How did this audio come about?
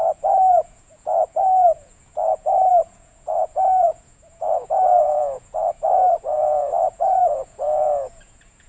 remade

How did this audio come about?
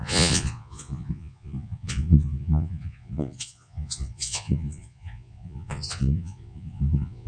remade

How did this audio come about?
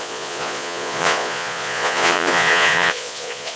remade